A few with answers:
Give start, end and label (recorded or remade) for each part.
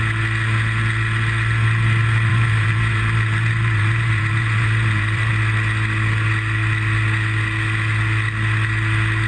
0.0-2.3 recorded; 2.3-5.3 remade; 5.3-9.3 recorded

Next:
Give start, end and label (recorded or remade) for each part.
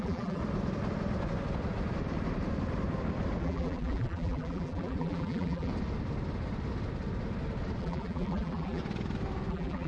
0.0-0.4 remade; 0.4-3.4 recorded; 3.4-5.7 remade; 5.7-7.8 recorded; 7.8-8.8 remade; 8.8-9.5 recorded; 9.5-9.9 remade